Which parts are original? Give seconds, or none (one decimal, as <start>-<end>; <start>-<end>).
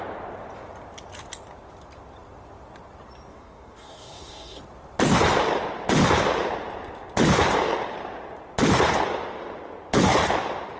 0.0-3.3; 4.6-10.8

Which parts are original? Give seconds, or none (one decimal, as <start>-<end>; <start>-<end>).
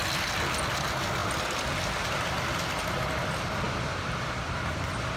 0.0-5.2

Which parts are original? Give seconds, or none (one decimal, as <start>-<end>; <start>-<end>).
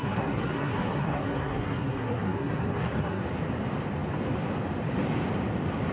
3.2-5.9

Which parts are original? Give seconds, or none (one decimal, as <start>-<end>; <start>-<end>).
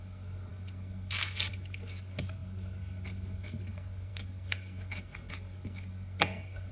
none